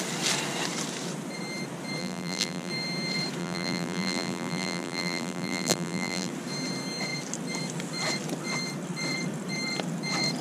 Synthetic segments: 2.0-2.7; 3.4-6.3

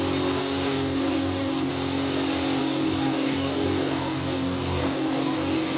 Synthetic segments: 0.4-1.7; 2.6-5.8

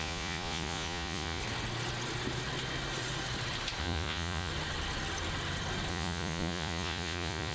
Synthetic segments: 0.0-1.4; 3.8-4.5; 5.9-7.5

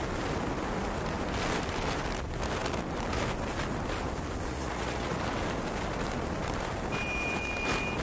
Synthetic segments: 4.5-5.2

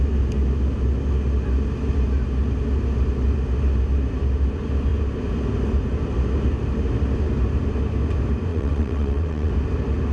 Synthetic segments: 8.5-9.5